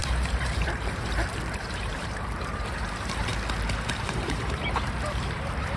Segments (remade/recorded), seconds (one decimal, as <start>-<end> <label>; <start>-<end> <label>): 0.0-3.3 remade; 3.3-3.9 recorded; 3.9-5.8 remade